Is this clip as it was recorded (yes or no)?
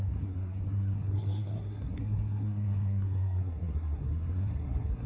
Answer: no